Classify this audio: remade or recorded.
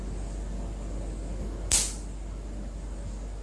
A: recorded